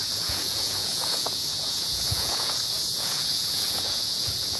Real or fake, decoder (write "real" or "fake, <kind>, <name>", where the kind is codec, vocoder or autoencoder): fake, vocoder, Vocos